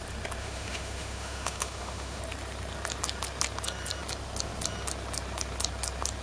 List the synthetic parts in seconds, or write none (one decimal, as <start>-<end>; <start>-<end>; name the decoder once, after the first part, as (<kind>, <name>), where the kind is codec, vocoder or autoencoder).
0.4-2.2 (autoencoder, DAC-VAE)